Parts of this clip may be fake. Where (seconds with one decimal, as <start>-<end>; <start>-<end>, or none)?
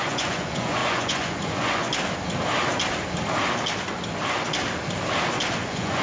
0.0-1.9; 5.5-6.0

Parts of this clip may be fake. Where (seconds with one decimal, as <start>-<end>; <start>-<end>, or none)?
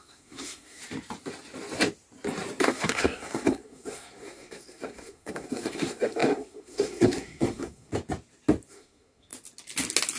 0.0-0.8; 2.6-7.9; 8.7-9.3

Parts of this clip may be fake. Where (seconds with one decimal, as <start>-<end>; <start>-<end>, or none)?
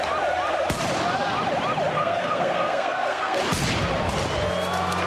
1.9-3.4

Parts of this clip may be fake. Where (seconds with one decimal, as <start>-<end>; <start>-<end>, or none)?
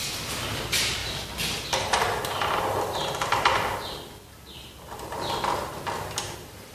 0.6-1.0; 2.6-3.5; 6.0-6.7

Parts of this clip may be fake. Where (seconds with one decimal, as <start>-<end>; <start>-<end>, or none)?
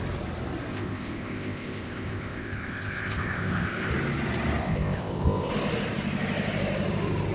0.7-3.9; 4.6-5.5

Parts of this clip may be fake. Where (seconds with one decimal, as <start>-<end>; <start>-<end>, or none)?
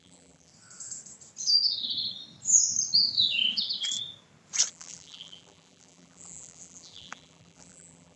0.0-0.5; 4.7-8.2